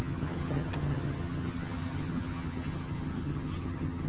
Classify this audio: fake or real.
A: fake